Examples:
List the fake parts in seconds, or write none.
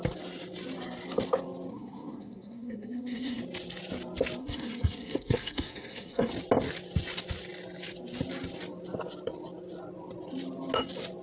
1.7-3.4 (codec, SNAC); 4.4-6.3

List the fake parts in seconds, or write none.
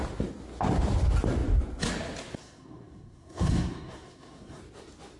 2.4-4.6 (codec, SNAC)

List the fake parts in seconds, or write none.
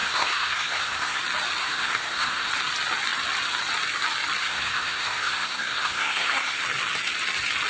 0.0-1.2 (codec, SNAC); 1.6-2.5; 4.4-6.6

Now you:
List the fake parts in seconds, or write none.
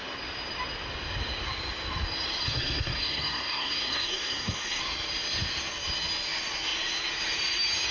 2.4-4.8 (codec, SNAC)